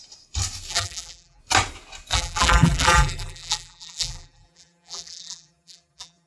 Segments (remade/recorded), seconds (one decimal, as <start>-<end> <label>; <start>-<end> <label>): 0.0-0.7 recorded; 0.7-1.4 remade; 1.4-2.1 recorded; 2.1-6.3 remade